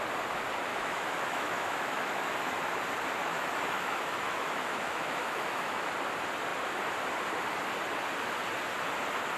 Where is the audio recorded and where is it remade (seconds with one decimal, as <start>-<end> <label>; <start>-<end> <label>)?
0.0-0.7 recorded; 0.7-2.3 remade; 2.3-3.2 recorded; 3.2-5.9 remade; 5.9-9.4 recorded